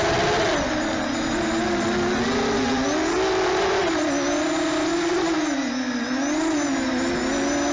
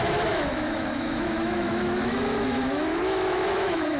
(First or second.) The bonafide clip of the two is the first